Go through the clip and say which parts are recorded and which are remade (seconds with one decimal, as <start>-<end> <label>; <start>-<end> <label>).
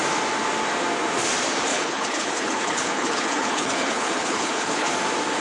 0.0-1.7 recorded; 1.7-4.9 remade; 4.9-5.4 recorded